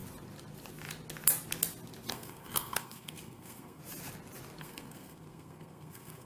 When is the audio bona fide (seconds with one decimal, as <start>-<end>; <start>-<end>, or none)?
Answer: 0.0-2.1; 3.8-4.6